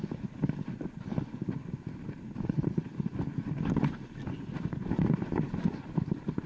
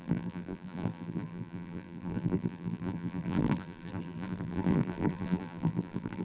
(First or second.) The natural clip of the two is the first